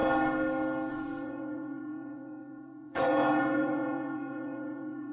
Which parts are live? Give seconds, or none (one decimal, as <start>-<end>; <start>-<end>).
0.0-0.9